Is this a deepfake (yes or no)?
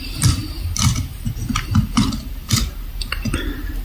yes